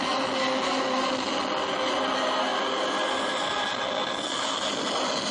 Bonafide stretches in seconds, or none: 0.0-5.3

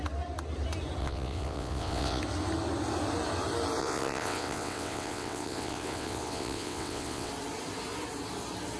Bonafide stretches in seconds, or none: 0.0-1.0; 2.2-3.8; 7.3-8.8

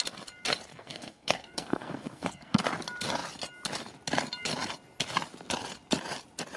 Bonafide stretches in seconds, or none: 0.0-0.7; 2.6-6.6

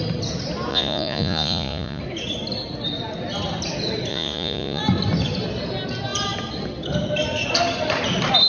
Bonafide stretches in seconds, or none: 0.0-0.7; 2.0-4.1; 4.8-8.5